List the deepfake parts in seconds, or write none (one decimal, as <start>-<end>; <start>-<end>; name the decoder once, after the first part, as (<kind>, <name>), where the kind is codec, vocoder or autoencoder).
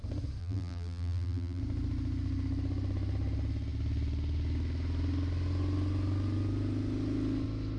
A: 0.4-1.6 (vocoder, BigVGAN v2)